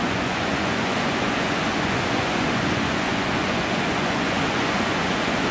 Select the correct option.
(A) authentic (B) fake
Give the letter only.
B